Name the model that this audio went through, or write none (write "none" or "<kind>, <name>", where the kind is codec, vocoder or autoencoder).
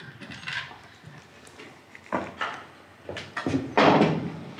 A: none